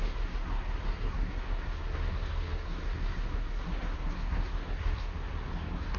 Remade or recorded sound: remade